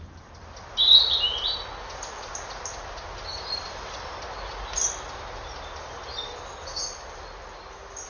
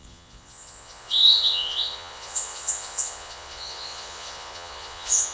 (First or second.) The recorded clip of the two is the first